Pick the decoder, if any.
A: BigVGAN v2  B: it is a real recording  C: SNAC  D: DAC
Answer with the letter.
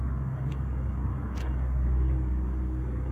D